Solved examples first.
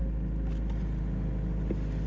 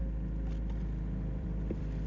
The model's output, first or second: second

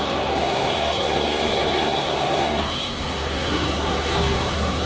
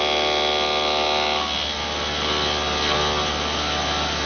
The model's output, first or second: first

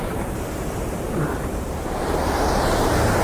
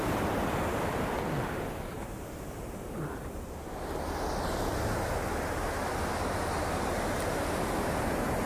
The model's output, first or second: first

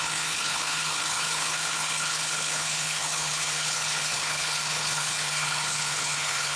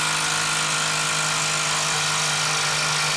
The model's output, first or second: first